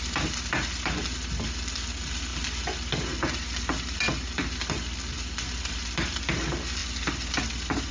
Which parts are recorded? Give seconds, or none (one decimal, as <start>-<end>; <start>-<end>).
0.0-7.9